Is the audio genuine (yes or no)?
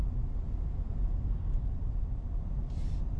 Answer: yes